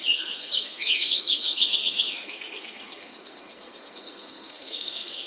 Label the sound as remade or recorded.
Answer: remade